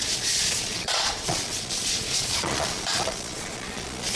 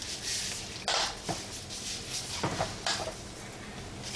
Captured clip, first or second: second